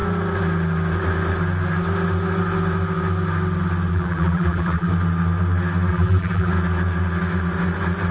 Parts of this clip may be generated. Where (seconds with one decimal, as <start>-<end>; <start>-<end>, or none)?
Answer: 3.9-4.9; 5.9-6.5